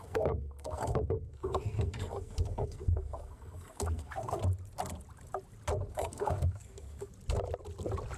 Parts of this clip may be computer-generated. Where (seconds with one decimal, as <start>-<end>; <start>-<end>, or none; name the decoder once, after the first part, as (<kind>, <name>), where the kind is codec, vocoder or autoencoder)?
0.0-4.4 (codec, SNAC); 5.9-7.1